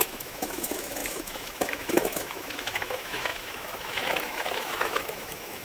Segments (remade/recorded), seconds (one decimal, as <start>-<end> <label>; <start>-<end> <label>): 0.0-5.6 remade